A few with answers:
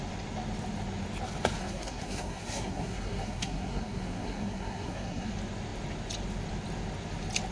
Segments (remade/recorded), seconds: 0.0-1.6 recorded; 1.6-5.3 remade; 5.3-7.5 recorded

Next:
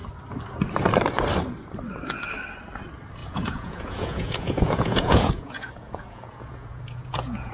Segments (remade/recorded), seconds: 0.0-3.2 recorded; 3.2-7.5 remade

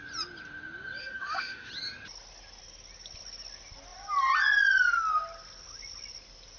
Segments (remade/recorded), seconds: 0.0-1.0 recorded; 1.0-1.7 remade; 1.7-6.6 recorded

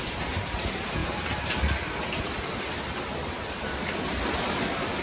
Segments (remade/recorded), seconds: 0.0-1.0 recorded; 1.0-4.0 remade; 4.0-5.0 recorded

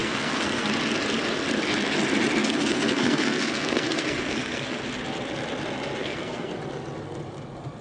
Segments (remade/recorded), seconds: 0.0-0.7 remade; 0.7-2.4 recorded; 2.4-4.8 remade; 4.8-6.0 recorded; 6.0-6.6 remade; 6.6-7.8 recorded

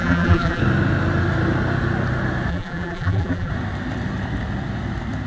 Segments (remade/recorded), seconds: 0.0-0.6 remade; 0.6-2.5 recorded; 2.5-3.5 remade; 3.5-5.3 recorded